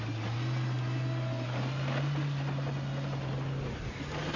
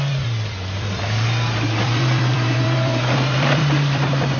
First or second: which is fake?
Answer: second